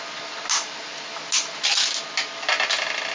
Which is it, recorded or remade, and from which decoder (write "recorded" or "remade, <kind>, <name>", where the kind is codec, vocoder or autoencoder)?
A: recorded